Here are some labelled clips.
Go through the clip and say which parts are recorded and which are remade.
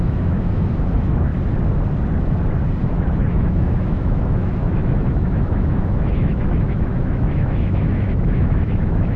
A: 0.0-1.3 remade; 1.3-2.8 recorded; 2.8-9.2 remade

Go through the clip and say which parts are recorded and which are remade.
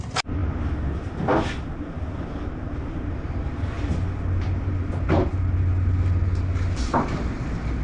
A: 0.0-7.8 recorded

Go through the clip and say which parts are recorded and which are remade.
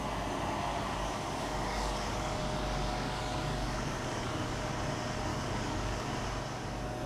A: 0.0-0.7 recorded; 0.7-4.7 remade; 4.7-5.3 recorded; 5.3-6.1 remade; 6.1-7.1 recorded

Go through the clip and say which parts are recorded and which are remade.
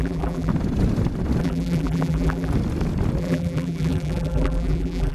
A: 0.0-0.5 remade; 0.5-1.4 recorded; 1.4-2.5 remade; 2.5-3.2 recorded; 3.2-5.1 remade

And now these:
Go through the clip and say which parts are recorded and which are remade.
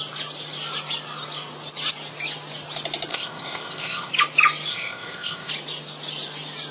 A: 0.0-3.1 recorded; 3.1-4.1 remade; 4.1-4.7 recorded; 4.7-5.5 remade; 5.5-6.7 recorded